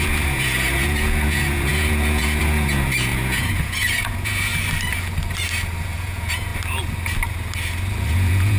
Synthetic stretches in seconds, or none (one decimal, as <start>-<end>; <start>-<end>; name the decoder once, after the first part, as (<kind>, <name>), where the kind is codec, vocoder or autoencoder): 0.0-4.5 (vocoder, Vocos); 5.8-6.5; 8.1-8.6